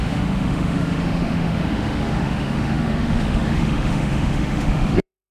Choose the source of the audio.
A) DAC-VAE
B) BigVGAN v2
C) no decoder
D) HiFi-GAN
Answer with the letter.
A